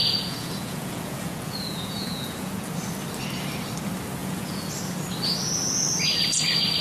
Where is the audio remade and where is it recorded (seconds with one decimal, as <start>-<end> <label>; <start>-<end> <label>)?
0.0-2.7 remade; 2.7-4.2 recorded; 4.2-4.7 remade; 4.7-6.8 recorded